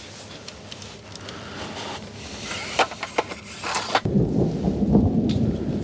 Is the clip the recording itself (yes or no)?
yes